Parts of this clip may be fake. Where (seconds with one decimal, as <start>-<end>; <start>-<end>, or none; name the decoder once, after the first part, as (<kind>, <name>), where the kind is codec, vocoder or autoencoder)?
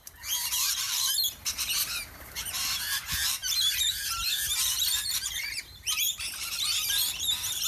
0.0-7.7 (vocoder, BigVGAN v2)